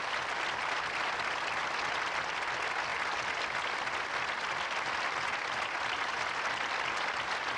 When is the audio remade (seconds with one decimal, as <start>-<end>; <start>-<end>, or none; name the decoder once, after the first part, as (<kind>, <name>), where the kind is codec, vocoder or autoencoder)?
none